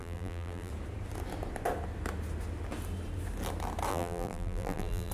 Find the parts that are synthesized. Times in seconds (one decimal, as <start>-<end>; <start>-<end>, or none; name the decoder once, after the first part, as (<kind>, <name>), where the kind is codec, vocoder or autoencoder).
0.0-0.7 (vocoder, BigVGAN v2); 3.9-5.1